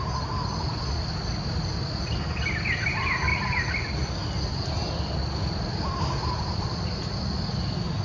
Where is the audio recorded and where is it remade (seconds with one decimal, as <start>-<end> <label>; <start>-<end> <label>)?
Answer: 0.0-8.0 recorded